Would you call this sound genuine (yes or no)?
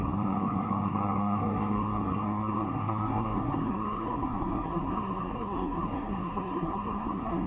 no